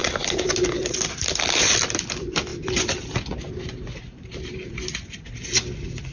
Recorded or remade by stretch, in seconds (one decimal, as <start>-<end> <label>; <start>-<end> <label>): 0.0-1.2 recorded; 1.2-2.5 remade; 2.5-4.3 recorded; 4.3-6.1 remade

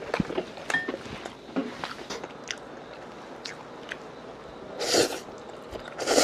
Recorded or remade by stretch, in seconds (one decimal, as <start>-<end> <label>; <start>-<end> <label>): 0.0-6.2 recorded

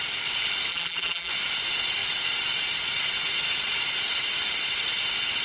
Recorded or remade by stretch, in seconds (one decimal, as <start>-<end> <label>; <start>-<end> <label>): 0.0-0.7 recorded; 0.7-1.3 remade; 1.3-5.4 recorded